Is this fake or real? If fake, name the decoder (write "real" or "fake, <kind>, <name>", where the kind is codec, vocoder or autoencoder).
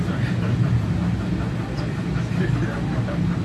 real